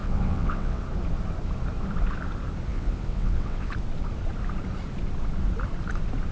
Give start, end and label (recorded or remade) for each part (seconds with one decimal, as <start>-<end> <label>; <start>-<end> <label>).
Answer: 0.0-0.8 remade; 0.8-2.7 recorded; 2.7-3.7 remade; 3.7-6.3 recorded